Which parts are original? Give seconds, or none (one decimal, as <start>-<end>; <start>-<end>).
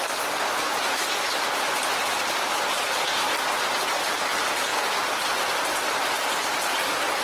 0.0-7.2